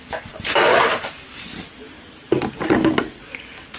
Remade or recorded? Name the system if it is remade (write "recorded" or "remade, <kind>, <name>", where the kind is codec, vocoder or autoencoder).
recorded